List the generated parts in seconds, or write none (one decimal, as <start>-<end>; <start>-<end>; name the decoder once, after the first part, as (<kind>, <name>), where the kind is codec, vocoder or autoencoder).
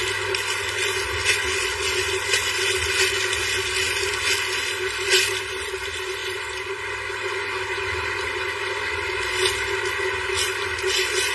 6.2-6.8 (vocoder, BigVGAN v2)